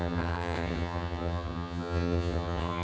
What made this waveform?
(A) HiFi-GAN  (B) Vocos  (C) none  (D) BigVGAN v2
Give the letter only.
A